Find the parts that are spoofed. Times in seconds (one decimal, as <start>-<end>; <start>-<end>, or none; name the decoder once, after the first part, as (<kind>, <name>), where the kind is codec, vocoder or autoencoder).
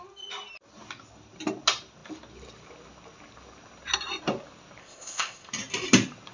4.8-5.5 (codec, ZipCodec)